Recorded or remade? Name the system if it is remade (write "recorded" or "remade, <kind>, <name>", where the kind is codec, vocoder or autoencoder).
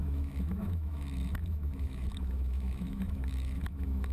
remade, autoencoder, DAC-VAE